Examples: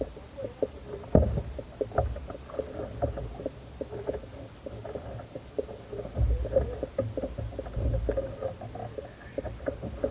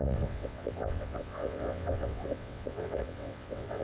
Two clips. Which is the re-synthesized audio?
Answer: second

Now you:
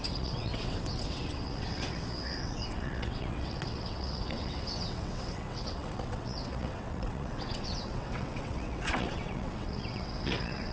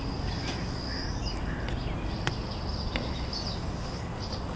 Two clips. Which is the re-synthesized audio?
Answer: first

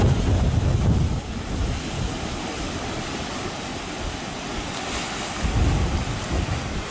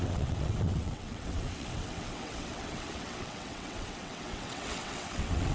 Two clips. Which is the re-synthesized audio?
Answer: second